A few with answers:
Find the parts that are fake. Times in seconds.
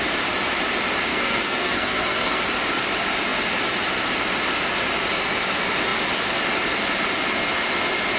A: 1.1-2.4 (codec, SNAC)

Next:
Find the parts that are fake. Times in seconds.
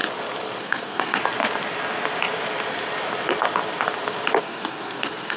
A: 0.6-1.2 (codec, SNAC); 4.4-5.4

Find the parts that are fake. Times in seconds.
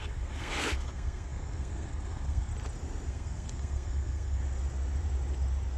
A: 0.0-2.5 (codec, SNAC); 3.1-4.4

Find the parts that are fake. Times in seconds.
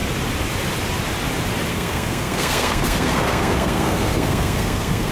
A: 1.7-5.1 (codec, SNAC)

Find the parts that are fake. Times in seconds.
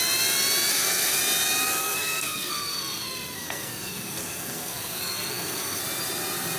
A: 0.7-1.2 (codec, SNAC); 1.8-5.8